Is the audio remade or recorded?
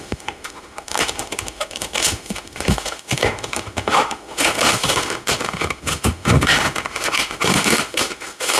remade